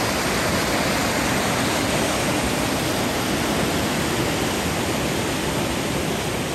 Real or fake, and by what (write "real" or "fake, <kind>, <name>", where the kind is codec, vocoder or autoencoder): real